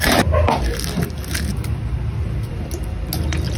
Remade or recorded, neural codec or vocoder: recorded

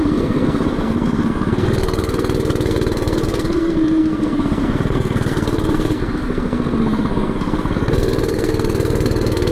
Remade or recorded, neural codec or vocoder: remade, codec, SNAC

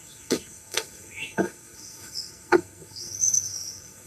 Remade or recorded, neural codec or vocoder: remade, codec, SNAC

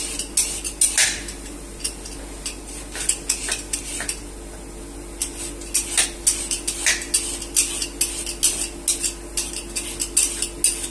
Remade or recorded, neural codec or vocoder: recorded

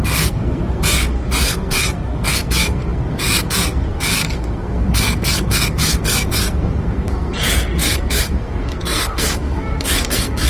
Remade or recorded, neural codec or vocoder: remade, codec, SNAC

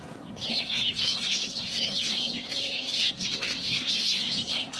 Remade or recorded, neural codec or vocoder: remade, codec, SNAC